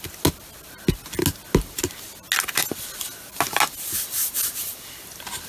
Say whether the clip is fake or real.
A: real